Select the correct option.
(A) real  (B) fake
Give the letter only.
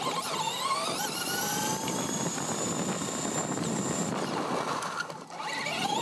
A